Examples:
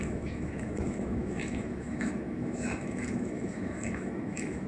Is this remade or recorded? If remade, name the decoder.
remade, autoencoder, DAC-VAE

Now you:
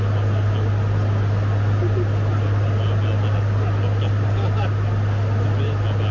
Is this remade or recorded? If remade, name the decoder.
recorded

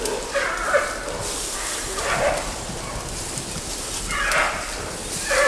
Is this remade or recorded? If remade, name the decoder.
recorded